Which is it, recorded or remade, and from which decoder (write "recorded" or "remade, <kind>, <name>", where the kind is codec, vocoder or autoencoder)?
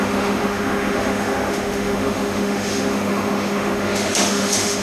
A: remade, autoencoder, DAC-VAE